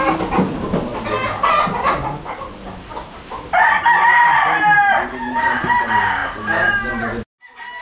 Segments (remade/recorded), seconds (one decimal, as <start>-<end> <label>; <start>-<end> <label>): 0.0-7.8 recorded